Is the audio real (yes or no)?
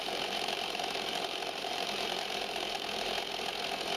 no